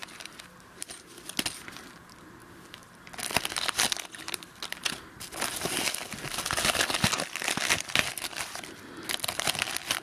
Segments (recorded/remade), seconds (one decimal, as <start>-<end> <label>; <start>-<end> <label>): 0.0-1.0 remade; 1.0-10.0 recorded